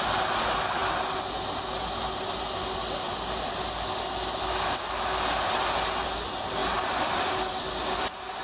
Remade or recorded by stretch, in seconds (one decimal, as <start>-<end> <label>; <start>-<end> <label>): 0.0-8.4 recorded

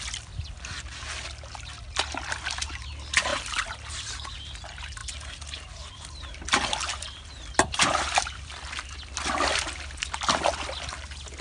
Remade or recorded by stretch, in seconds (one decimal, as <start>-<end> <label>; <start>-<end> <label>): 0.0-11.4 recorded

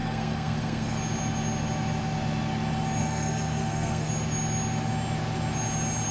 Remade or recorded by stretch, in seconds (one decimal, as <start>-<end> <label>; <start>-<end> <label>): 0.0-1.0 remade; 1.0-3.0 recorded; 3.0-4.1 remade; 4.1-6.1 recorded

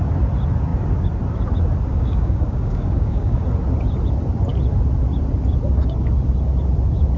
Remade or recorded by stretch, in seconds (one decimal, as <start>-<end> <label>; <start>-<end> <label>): 0.0-1.9 recorded; 1.9-3.4 remade; 3.4-7.2 recorded

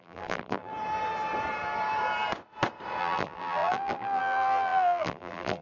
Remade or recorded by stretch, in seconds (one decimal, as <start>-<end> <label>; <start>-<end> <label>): 0.0-0.7 remade; 0.7-3.0 recorded; 3.0-5.6 remade

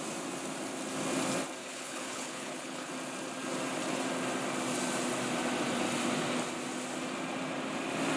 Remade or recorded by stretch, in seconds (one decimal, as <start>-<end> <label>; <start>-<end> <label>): 0.0-1.6 recorded; 1.6-2.9 remade; 2.9-8.2 recorded

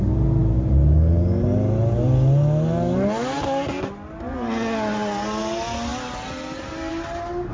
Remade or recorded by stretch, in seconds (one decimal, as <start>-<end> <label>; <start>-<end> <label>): 0.0-7.5 recorded